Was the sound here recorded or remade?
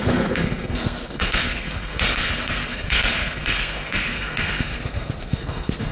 remade